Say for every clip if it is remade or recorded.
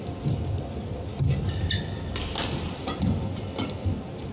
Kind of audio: recorded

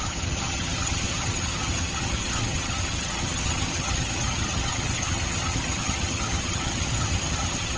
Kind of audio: remade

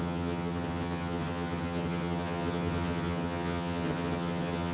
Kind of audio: remade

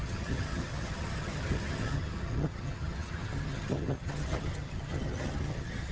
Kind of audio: remade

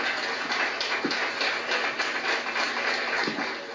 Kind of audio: recorded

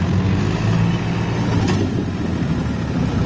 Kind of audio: recorded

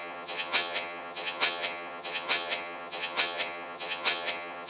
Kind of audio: remade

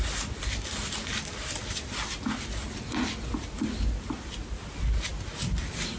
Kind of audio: recorded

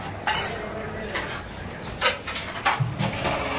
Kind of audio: recorded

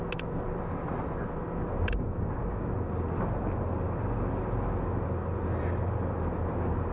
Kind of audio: recorded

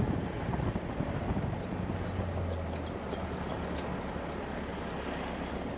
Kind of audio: recorded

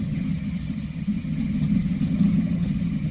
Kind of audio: remade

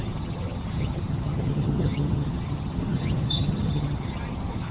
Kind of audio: remade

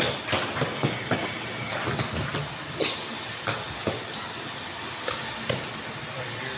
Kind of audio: recorded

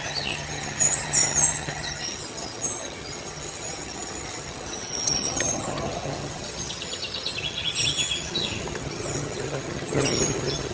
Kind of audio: remade